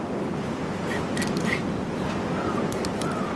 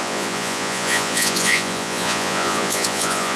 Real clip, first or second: first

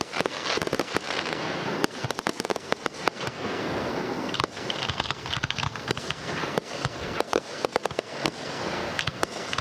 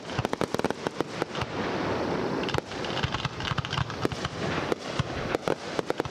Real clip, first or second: second